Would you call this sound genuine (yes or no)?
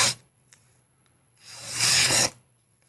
no